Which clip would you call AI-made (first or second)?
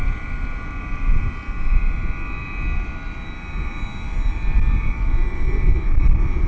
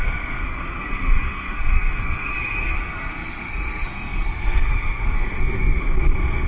second